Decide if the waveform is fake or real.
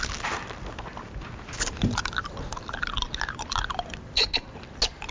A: real